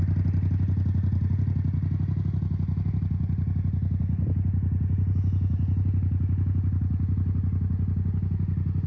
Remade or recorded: recorded